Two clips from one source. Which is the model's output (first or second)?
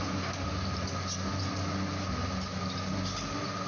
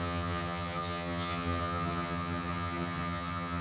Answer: second